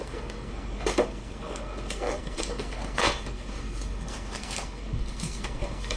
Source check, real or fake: fake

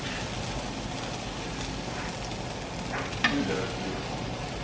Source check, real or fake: real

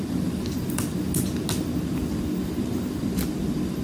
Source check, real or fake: real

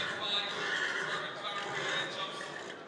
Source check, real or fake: real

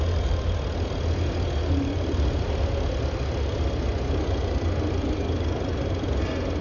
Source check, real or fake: real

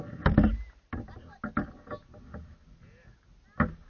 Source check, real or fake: real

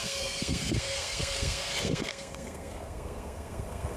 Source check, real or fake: fake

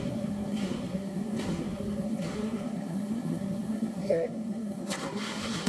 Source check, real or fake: fake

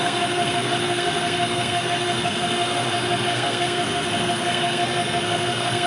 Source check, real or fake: fake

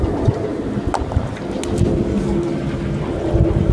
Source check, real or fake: real